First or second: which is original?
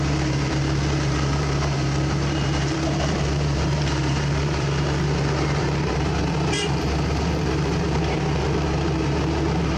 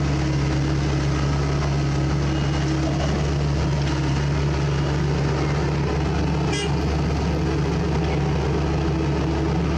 second